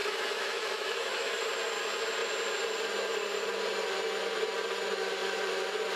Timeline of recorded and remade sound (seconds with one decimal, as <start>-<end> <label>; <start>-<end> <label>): 0.0-1.5 remade; 1.5-6.0 recorded